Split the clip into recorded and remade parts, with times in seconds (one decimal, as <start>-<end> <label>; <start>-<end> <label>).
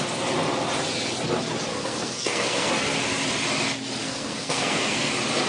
0.0-1.7 recorded; 1.7-2.7 remade; 2.7-4.0 recorded; 4.0-5.1 remade; 5.1-5.5 recorded